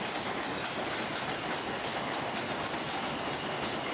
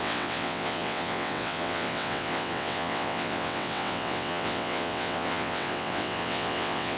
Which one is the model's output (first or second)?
second